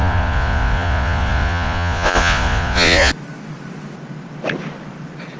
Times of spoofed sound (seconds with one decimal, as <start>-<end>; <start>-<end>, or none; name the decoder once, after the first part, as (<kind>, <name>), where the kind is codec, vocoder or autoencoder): 0.0-3.1 (vocoder, Vocos)